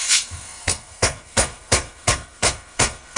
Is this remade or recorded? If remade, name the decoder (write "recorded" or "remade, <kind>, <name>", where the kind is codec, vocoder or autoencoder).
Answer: remade, codec, SNAC